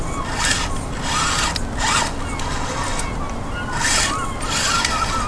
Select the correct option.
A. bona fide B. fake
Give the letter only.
A